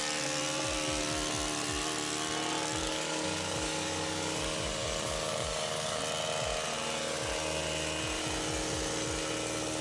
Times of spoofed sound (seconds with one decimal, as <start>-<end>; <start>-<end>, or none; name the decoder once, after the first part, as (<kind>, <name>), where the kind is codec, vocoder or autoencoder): 2.8-6.0 (codec, DAC)